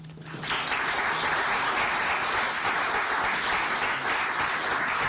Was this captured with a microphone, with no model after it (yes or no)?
yes